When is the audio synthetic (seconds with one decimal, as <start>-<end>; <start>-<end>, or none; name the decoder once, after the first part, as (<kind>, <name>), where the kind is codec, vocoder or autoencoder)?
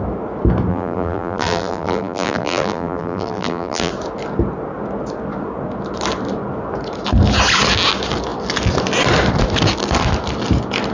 0.7-3.9 (vocoder, BigVGAN v2)